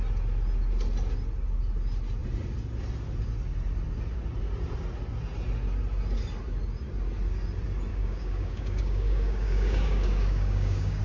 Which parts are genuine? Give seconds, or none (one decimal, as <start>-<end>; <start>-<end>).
0.0-7.9